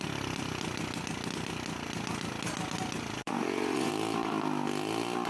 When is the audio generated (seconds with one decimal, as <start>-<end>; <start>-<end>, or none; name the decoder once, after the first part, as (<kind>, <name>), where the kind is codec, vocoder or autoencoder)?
3.2-3.9 (vocoder, Vocos)